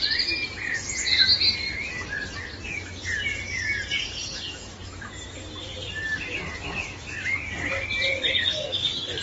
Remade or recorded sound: recorded